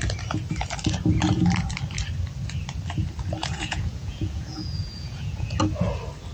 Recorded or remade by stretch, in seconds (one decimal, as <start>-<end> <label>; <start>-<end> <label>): 0.0-3.4 recorded; 3.4-5.6 remade; 5.6-6.3 recorded